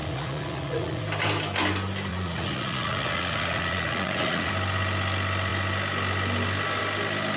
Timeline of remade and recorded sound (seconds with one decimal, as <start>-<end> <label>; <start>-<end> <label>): 0.0-1.0 remade; 1.0-2.1 recorded; 2.1-4.5 remade; 4.5-7.4 recorded